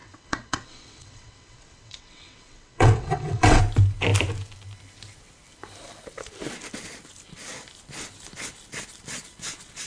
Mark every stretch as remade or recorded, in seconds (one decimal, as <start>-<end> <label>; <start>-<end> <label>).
0.0-3.6 remade; 3.6-9.9 recorded